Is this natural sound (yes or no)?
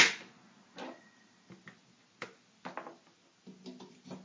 yes